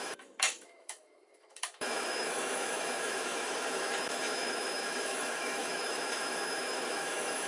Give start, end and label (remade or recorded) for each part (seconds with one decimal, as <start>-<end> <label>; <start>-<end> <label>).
0.0-7.5 remade